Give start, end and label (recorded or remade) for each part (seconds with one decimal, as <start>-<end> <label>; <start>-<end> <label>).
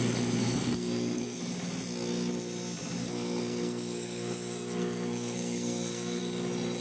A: 0.0-0.4 recorded; 0.4-1.4 remade; 1.4-3.0 recorded; 3.0-6.2 remade; 6.2-6.8 recorded